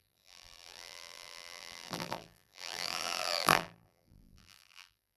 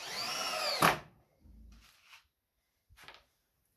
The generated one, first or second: first